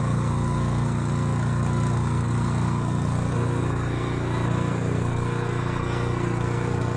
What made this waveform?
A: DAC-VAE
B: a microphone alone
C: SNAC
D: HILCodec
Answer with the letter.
C